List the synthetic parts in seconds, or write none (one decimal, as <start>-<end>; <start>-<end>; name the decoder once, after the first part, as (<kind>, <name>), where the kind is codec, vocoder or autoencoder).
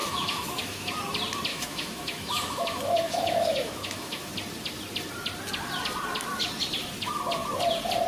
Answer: 0.0-1.0 (autoencoder, DAC-VAE); 1.5-4.3